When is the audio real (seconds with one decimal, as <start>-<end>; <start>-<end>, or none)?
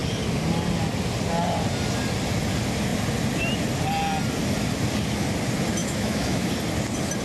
0.0-5.8; 6.5-7.2